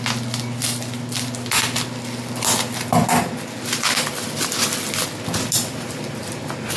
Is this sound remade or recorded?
recorded